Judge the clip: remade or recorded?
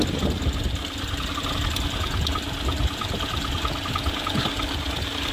recorded